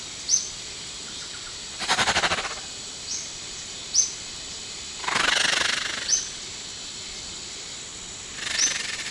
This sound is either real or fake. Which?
real